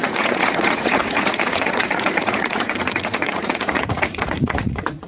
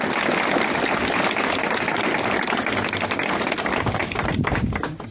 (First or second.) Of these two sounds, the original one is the second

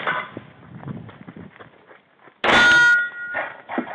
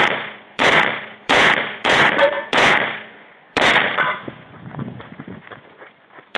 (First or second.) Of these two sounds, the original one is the first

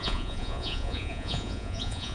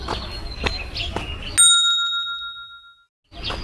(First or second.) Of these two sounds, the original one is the second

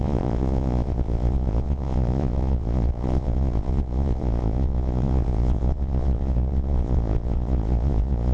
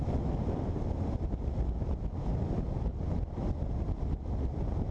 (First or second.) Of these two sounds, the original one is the second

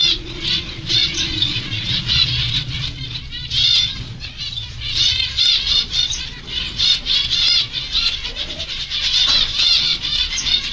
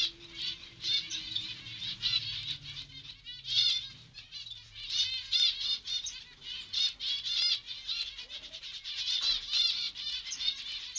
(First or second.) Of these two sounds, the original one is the second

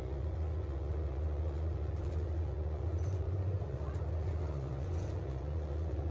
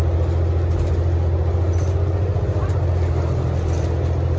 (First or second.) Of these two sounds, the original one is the second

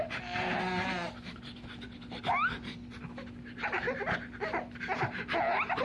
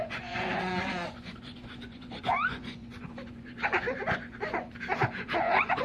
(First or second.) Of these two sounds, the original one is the first